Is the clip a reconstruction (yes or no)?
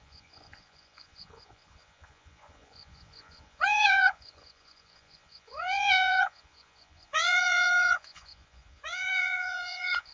yes